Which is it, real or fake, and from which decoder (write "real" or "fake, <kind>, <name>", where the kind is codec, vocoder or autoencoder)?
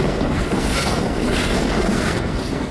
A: fake, codec, SNAC